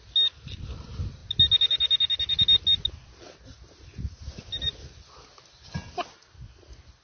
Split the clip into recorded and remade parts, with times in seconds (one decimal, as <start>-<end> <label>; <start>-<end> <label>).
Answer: 0.0-7.0 recorded